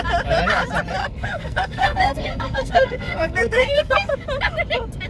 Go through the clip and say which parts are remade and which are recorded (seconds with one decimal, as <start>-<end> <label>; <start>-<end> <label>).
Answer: 0.0-1.0 recorded; 1.0-4.1 remade; 4.1-5.1 recorded